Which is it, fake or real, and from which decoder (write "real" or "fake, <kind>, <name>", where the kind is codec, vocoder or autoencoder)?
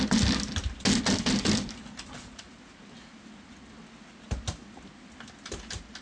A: real